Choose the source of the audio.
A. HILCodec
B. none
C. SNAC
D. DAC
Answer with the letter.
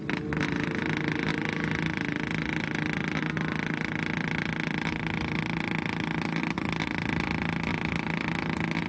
B